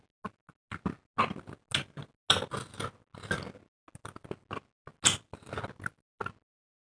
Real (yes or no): yes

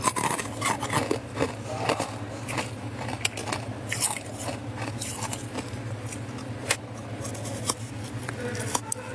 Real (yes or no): yes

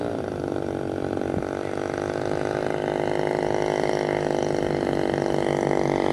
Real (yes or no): yes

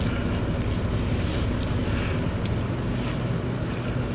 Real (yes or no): yes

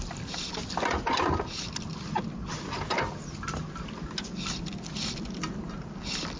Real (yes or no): yes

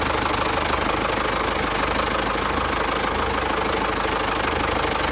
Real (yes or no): yes